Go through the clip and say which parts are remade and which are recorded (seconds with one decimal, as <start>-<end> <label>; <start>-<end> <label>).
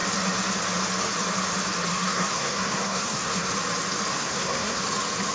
0.0-1.9 recorded; 1.9-3.5 remade; 3.5-4.1 recorded; 4.1-4.8 remade; 4.8-5.3 recorded